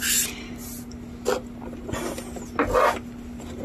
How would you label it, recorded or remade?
recorded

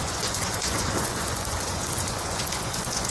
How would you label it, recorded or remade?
remade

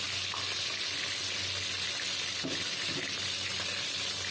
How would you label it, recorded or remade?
recorded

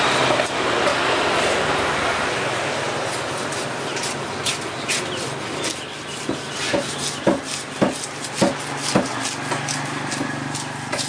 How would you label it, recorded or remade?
recorded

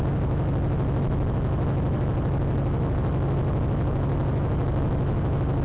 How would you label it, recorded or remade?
recorded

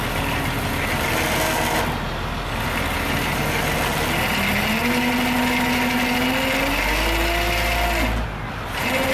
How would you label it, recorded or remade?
recorded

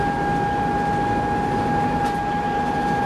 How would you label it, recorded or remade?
recorded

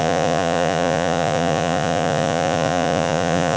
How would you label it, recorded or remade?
remade